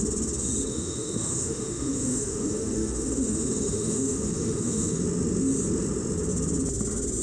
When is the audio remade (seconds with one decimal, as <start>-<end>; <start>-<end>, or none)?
0.7-5.0